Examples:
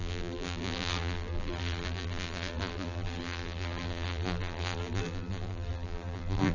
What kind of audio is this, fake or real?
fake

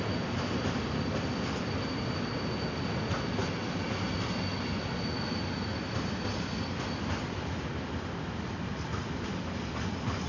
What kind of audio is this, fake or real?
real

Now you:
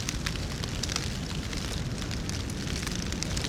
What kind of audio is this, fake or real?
real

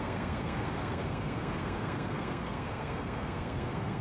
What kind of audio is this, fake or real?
fake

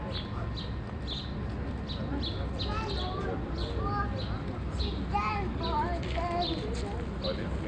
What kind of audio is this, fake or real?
real